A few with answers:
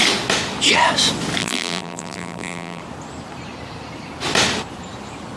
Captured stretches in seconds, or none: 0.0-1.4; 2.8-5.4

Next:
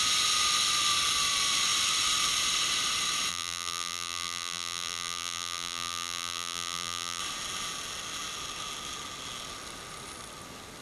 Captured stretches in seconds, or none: 0.0-3.3; 7.2-10.8